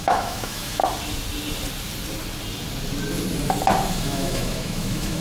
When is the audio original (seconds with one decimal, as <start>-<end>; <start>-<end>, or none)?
0.8-3.9